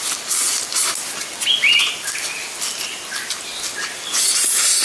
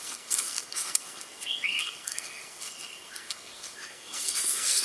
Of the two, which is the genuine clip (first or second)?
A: first